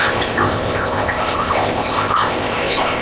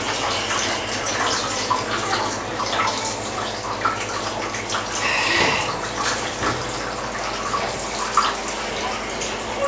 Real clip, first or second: second